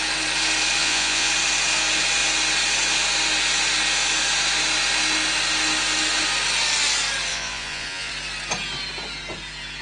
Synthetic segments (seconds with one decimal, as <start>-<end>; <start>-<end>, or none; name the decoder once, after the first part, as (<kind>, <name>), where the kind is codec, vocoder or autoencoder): 0.8-1.3 (vocoder, Vocos); 7.3-8.1

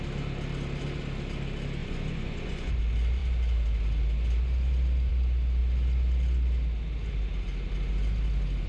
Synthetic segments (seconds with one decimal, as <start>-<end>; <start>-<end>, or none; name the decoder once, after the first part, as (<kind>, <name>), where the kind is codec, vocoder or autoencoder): 1.8-2.8 (vocoder, Vocos)